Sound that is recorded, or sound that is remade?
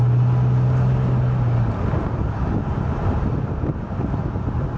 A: recorded